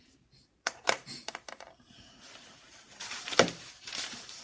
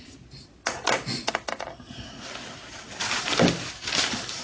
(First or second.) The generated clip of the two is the first